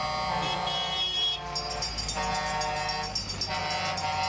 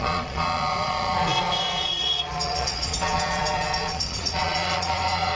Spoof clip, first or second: second